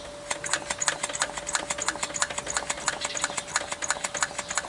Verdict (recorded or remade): recorded